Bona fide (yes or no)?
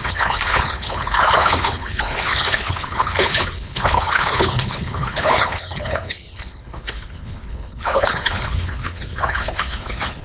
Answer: no